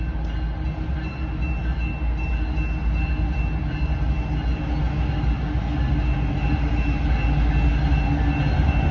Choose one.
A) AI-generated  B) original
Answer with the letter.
B